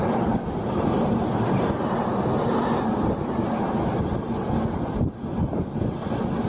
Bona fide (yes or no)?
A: yes